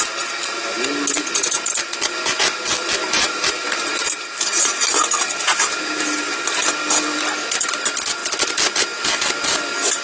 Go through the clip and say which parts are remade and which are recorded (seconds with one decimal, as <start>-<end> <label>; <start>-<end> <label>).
0.0-3.0 recorded; 3.0-4.9 remade; 4.9-10.0 recorded